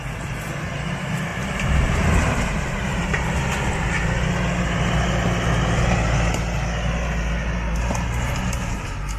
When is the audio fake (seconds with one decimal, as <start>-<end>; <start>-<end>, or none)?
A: 1.3-3.4